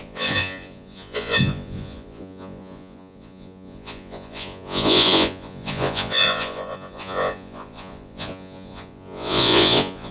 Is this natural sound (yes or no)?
no